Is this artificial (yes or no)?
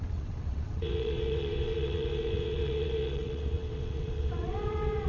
yes